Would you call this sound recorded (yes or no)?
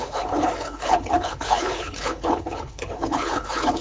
no